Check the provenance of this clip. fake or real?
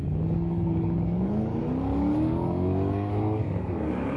fake